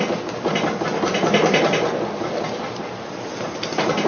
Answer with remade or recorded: recorded